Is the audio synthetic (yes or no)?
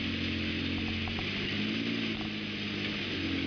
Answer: no